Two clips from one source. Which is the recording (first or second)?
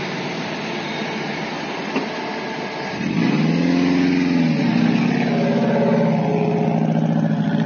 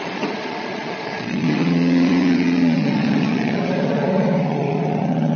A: first